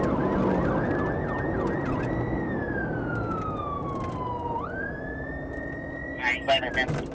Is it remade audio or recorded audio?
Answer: recorded